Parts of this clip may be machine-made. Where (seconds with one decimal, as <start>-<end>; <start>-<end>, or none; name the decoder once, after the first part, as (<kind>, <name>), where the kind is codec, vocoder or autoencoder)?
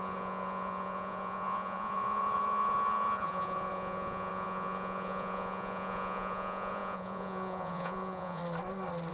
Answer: 0.0-8.4 (vocoder, Vocos)